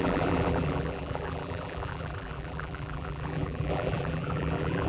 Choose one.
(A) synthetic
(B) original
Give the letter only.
A